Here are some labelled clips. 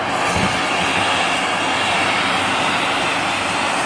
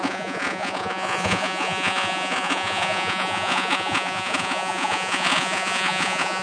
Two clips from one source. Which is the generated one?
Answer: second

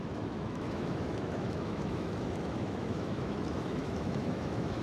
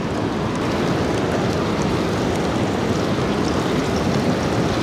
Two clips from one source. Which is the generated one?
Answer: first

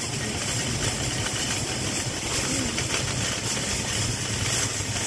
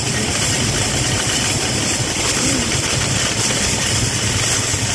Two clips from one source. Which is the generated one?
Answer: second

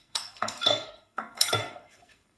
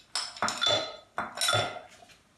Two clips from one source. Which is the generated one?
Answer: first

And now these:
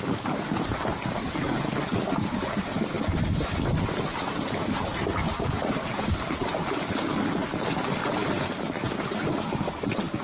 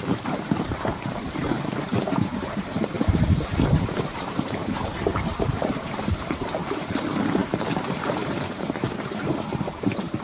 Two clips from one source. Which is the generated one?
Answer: second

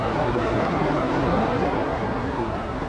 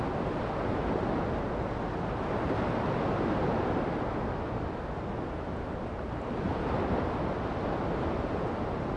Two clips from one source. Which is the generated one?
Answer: first